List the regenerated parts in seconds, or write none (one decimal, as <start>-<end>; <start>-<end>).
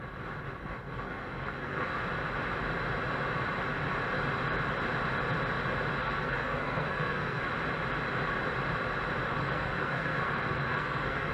0.6-2.0; 6.0-7.5; 9.3-11.3